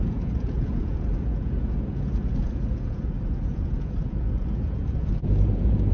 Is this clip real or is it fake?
fake